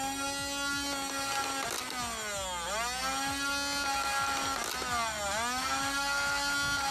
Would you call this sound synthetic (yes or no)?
no